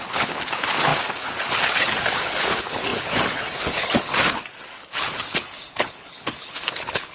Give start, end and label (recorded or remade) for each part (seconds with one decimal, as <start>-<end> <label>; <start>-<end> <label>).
0.0-7.1 remade